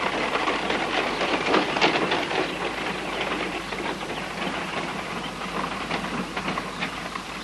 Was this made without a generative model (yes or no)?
yes